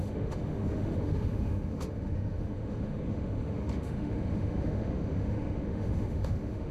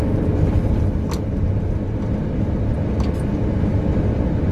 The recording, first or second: second